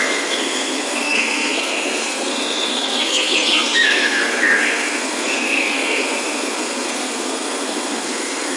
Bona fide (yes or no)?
no